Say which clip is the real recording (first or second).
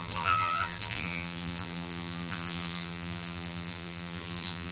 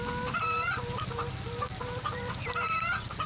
second